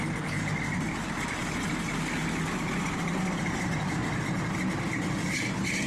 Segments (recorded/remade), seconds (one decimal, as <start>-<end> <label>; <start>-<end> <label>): 0.0-1.4 remade; 1.4-4.9 recorded; 4.9-5.9 remade